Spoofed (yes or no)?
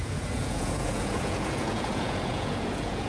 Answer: yes